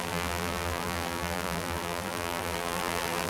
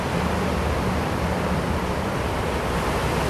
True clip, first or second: second